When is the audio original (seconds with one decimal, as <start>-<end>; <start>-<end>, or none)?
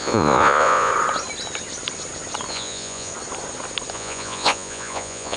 0.9-2.5; 3.1-3.9